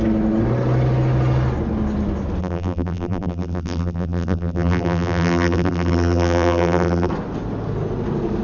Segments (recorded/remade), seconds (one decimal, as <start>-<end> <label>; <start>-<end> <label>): 0.0-2.4 recorded; 2.4-7.1 remade; 7.1-8.4 recorded